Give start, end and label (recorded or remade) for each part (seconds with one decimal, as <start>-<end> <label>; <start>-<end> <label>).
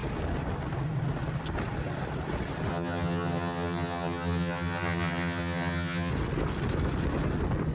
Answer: 0.0-2.7 recorded; 2.7-6.1 remade; 6.1-7.7 recorded